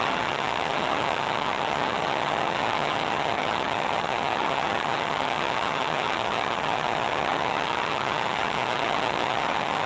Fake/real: fake